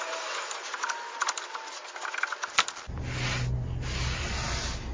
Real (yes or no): yes